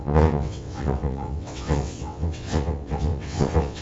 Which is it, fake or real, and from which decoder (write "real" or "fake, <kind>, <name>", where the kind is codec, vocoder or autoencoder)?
fake, vocoder, WaveNeXt